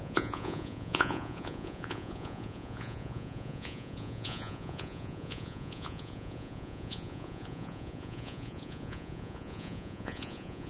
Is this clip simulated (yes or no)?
yes